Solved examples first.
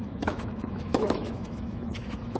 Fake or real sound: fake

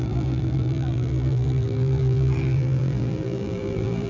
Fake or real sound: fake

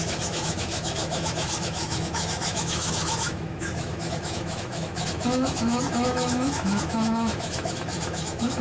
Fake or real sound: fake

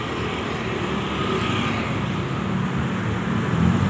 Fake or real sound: real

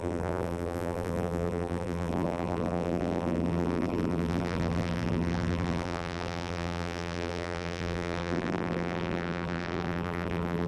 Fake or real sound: fake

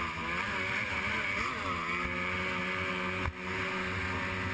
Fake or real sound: real